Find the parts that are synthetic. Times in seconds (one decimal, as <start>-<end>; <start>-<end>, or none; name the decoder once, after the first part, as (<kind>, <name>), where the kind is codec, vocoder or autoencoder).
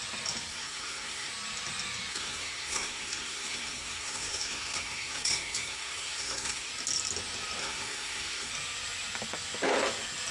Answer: 0.5-1.3 (codec, SNAC); 2.1-6.7; 7.6-8.5